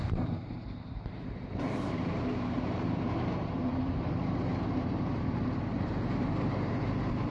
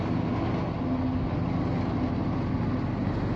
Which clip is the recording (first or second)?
second